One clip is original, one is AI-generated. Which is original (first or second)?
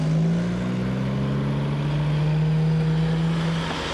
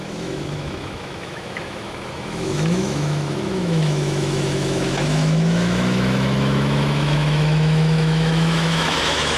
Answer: first